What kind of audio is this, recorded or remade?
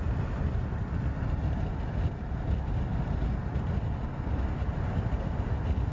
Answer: recorded